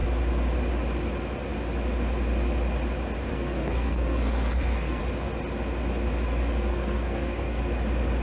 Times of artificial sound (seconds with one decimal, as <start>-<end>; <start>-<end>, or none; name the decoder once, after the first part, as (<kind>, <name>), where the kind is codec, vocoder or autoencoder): 3.3-5.0 (codec, SNAC); 6.7-7.6